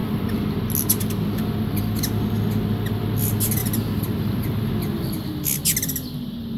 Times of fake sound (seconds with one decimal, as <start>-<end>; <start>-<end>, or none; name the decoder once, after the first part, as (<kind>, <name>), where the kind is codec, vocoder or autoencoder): 3.6-4.7 (vocoder, BigVGAN v2)